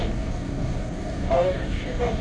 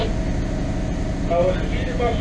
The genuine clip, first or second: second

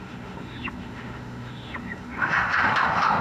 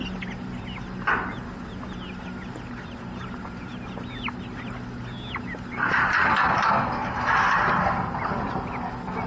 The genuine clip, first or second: second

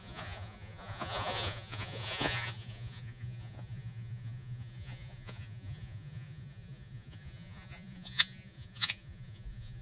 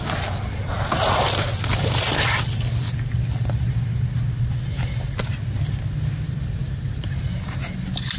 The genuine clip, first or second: second